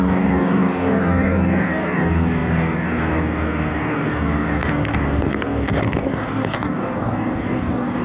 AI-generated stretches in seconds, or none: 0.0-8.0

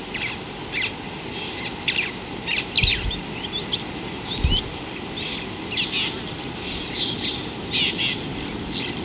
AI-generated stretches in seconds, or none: none

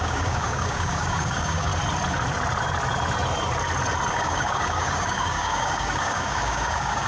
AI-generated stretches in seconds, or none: 0.0-1.7; 4.1-7.1

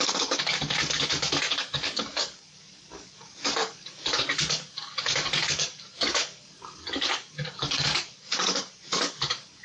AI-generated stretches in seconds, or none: 0.0-9.6